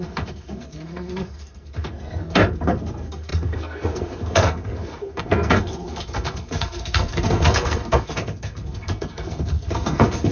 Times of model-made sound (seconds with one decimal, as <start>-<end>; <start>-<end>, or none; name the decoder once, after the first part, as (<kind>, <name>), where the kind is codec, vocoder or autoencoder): 0.0-10.3 (codec, SNAC)